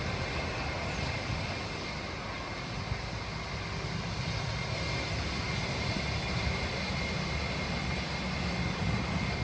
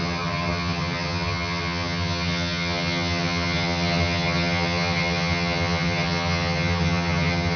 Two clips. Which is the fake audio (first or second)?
second